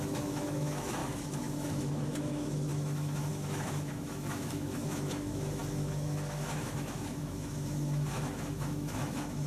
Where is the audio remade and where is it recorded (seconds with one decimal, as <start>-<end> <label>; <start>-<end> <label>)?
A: 0.0-9.5 remade